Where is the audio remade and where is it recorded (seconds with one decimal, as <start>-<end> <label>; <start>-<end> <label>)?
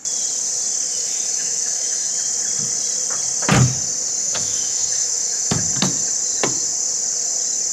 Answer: 0.0-0.9 recorded; 0.9-2.1 remade; 2.1-4.2 recorded; 4.2-5.6 remade; 5.6-7.7 recorded